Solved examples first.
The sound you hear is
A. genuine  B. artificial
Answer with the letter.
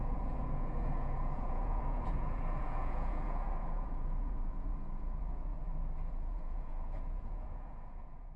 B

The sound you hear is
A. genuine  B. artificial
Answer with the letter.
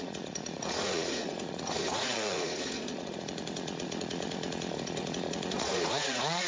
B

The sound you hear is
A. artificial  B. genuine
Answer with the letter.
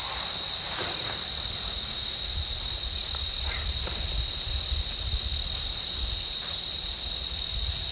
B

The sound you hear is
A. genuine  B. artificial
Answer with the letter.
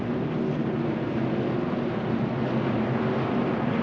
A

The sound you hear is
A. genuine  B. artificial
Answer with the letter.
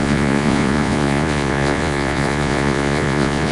B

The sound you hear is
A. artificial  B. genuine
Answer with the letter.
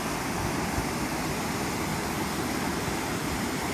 B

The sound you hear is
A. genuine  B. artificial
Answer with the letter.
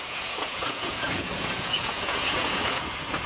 B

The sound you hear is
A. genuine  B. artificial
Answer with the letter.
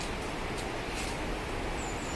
A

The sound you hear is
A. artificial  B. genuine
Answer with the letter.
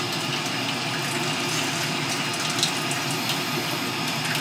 B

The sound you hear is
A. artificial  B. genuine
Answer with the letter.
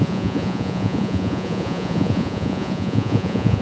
A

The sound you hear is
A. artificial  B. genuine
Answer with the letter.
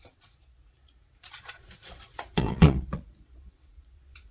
A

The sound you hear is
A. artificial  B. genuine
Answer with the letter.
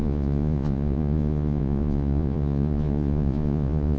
A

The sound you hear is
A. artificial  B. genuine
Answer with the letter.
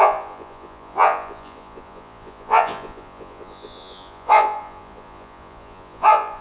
A